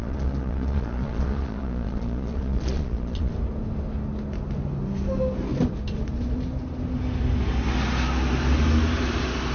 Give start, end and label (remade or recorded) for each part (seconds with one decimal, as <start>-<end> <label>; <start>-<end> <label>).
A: 0.0-3.3 remade; 3.3-9.5 recorded